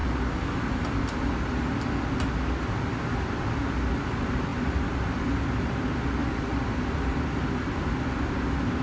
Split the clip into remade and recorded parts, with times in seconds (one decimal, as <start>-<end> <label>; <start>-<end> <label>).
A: 0.0-8.8 recorded